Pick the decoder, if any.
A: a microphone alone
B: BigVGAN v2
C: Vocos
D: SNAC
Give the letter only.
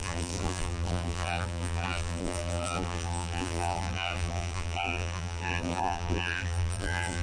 B